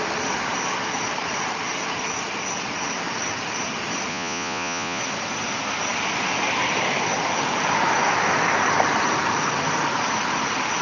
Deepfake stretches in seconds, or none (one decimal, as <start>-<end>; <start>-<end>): 4.1-5.0

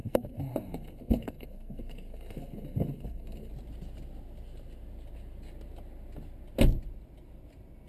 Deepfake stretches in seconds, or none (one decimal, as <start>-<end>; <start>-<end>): 0.0-3.5